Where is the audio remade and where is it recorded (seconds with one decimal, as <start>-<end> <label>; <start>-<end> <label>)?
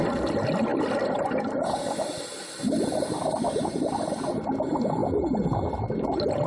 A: 0.0-5.0 remade; 5.0-6.5 recorded